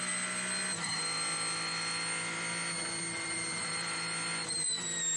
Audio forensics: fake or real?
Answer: real